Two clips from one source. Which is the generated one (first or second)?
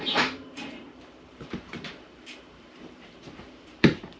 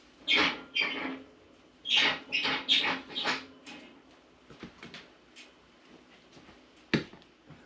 first